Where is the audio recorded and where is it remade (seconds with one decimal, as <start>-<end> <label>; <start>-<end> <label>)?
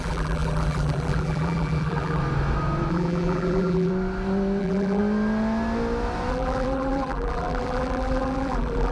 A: 0.0-2.2 remade; 2.2-2.9 recorded; 2.9-3.9 remade; 3.9-4.6 recorded; 4.6-5.0 remade; 5.0-6.3 recorded; 6.3-8.9 remade